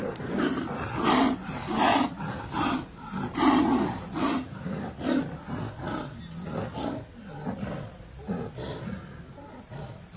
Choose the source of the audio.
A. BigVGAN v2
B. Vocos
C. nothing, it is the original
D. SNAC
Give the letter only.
C